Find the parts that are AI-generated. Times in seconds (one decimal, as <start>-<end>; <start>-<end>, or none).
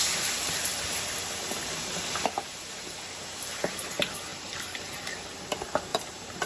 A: 0.7-1.2; 4.3-5.4; 5.9-6.5